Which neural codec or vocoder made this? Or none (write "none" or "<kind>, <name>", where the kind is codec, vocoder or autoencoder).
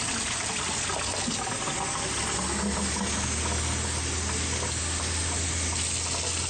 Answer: none